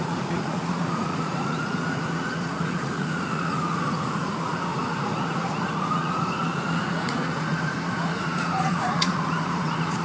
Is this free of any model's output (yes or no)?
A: no